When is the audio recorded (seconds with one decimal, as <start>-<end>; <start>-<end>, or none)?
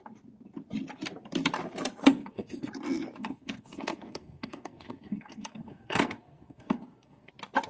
0.0-2.0; 2.7-3.2; 7.3-7.7